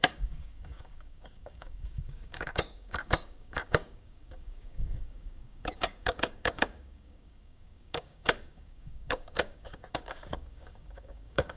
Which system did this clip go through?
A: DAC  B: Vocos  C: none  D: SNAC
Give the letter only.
A